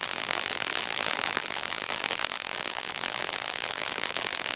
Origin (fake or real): fake